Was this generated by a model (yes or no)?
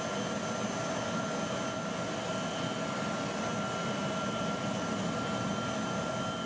no